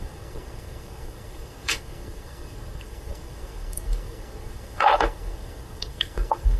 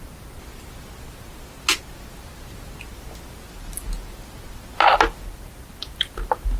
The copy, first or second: first